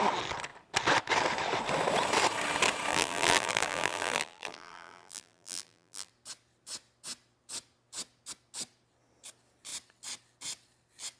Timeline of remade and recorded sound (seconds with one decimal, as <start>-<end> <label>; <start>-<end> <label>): 0.0-2.9 recorded; 2.9-6.1 remade; 6.1-11.2 recorded